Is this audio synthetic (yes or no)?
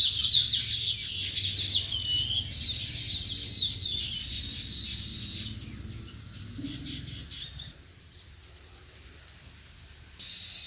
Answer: no